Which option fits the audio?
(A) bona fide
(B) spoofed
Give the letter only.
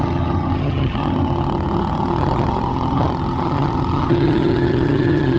B